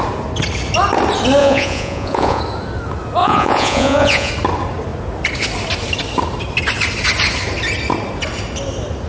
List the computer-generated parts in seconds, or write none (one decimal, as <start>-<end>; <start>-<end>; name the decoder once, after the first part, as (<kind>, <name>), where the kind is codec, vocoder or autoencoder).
1.4-2.4 (vocoder, Vocos); 3.2-4.3